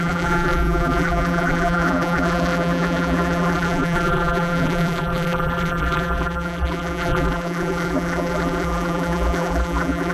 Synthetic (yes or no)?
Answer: yes